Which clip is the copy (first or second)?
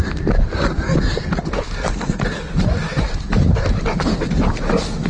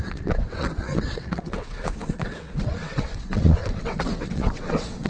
second